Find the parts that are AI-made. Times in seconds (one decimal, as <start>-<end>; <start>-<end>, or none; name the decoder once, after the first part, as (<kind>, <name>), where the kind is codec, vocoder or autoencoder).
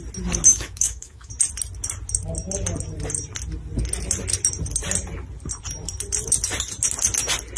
0.5-1.3 (autoencoder, DAC-VAE)